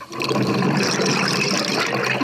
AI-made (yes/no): no